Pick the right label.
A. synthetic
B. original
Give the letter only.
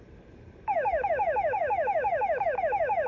A